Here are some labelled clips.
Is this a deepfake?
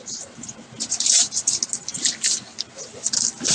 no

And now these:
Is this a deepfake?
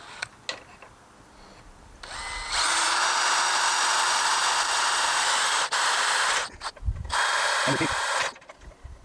no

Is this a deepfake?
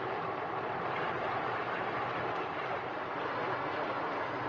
no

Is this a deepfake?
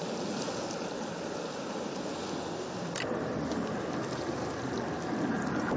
no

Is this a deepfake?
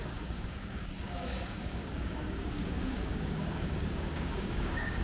yes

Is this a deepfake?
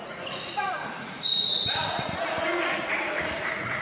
yes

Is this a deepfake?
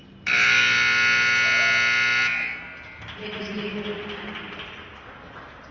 no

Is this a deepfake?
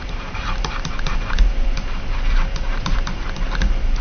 yes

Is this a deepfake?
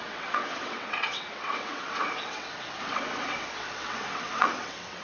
yes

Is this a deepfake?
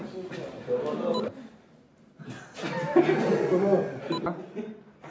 no